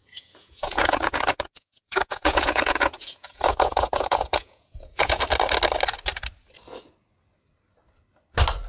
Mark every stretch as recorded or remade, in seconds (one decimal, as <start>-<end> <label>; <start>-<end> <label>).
0.0-5.2 remade; 5.2-8.7 recorded